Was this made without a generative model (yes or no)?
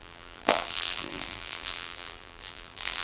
no